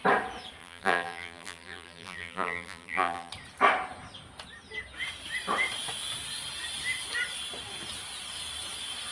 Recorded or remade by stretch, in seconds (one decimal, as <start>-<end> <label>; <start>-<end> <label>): 0.0-0.6 recorded; 0.6-3.3 remade; 3.3-9.1 recorded